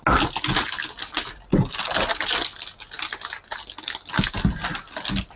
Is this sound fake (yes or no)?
no